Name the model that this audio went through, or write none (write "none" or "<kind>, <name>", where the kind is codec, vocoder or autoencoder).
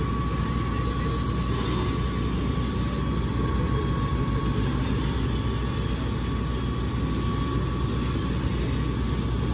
none